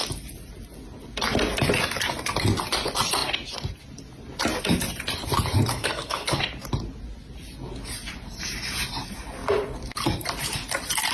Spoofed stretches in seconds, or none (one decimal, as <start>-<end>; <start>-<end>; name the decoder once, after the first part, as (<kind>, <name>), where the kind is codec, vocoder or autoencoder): 5.7-6.4 (codec, SNAC)

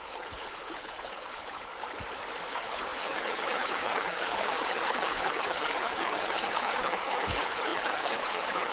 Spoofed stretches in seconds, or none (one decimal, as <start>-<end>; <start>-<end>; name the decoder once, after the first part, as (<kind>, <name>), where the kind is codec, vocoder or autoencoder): 0.0-1.7 (codec, HILCodec); 2.5-8.7

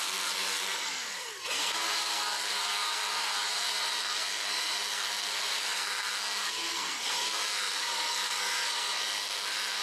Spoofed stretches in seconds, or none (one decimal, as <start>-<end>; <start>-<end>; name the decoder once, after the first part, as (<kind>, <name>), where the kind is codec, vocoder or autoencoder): 0.0-9.8 (codec, SNAC)

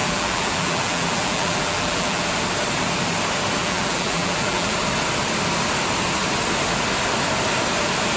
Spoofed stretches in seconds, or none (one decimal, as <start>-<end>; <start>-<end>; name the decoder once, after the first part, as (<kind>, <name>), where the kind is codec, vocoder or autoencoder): 0.0-2.2 (vocoder, BigVGAN v2); 3.6-4.7

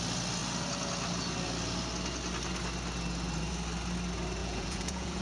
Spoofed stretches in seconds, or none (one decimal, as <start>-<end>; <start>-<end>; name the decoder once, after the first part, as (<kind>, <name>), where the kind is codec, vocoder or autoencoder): 4.4-5.2 (vocoder, Vocos)

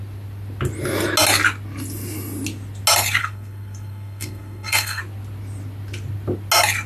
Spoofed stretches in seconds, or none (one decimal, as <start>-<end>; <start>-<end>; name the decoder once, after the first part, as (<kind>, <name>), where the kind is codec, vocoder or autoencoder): 3.2-5.0 (codec, SNAC)

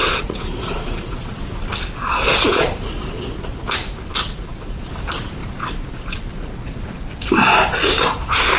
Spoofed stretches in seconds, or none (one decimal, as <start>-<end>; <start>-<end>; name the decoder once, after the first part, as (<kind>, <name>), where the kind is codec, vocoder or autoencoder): 0.0-1.4 (vocoder, Vocos); 2.5-3.6; 4.2-4.9; 5.4-7.0